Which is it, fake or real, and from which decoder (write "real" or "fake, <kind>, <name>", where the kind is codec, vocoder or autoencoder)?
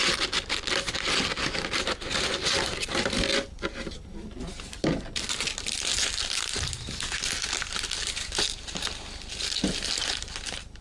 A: real